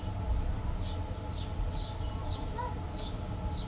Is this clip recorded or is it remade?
recorded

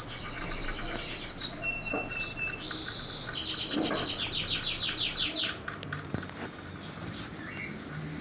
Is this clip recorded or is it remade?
recorded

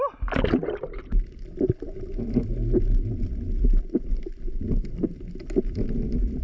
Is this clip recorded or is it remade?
recorded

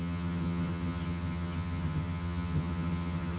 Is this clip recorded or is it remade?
remade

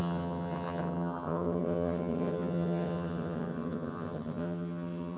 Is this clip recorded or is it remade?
remade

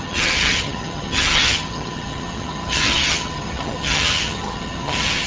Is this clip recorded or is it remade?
remade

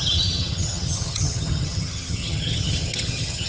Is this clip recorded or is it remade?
remade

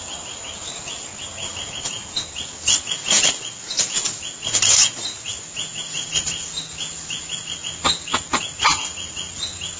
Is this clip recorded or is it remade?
recorded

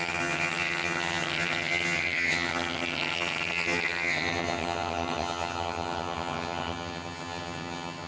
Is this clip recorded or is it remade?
remade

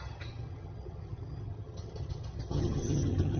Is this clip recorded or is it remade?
remade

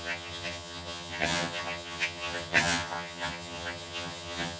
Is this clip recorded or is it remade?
remade